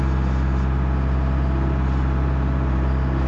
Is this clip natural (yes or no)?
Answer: yes